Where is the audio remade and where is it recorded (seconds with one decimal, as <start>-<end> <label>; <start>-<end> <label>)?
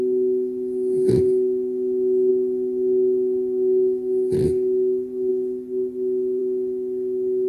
0.0-7.5 recorded